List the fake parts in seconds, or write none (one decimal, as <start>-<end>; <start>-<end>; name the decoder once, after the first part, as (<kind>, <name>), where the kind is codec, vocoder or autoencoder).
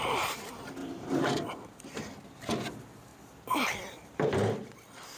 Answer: 0.8-1.9 (vocoder, BigVGAN v2); 3.1-4.3